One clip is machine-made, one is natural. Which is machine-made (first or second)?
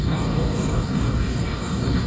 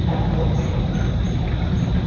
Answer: first